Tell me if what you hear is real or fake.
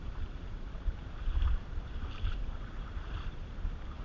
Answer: fake